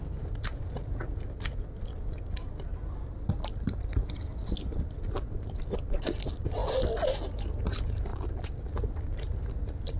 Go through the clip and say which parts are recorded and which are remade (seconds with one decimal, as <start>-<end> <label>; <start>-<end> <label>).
0.0-0.5 recorded; 0.5-1.1 remade; 1.1-10.0 recorded